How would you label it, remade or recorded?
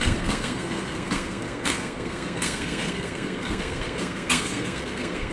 remade